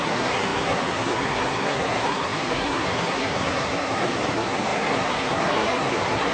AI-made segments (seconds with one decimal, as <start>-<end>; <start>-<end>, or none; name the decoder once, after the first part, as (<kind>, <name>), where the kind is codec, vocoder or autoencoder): 0.0-6.3 (codec, SNAC)